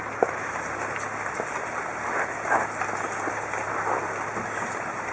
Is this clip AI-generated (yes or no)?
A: no